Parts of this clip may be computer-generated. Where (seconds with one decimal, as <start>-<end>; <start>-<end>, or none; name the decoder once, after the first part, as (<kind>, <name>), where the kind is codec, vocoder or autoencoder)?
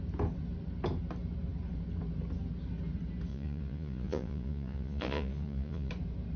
3.3-5.9 (vocoder, Vocos)